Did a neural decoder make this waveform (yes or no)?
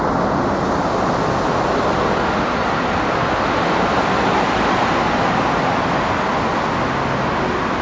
no